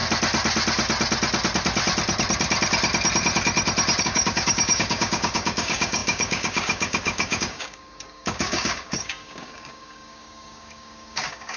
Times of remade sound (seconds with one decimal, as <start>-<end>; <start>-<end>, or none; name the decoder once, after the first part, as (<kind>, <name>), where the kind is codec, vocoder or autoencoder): 4.0-11.6 (codec, DAC)